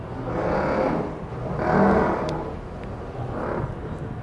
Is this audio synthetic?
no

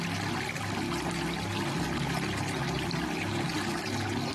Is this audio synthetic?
no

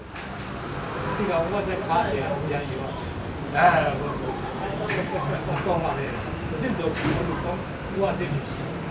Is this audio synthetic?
yes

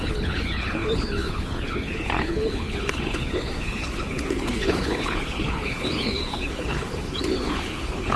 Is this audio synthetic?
yes